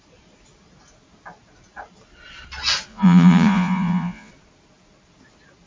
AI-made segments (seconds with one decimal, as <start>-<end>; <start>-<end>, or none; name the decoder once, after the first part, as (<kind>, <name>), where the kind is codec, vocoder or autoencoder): 2.9-4.3 (vocoder, Vocos)